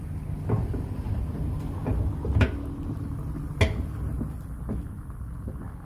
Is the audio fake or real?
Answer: real